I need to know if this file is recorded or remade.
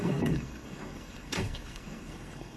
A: remade